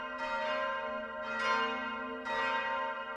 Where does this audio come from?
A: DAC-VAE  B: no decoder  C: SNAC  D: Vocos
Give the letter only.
B